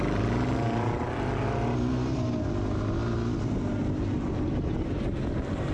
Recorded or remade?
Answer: recorded